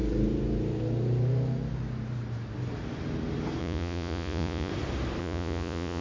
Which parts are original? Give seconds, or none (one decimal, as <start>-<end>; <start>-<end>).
0.0-3.6; 4.7-5.2